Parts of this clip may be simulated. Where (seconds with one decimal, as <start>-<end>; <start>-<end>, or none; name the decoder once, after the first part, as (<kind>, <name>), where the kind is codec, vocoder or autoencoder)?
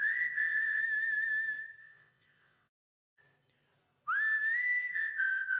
0.0-0.8 (vocoder, WaveNeXt); 1.8-3.2; 4.9-5.6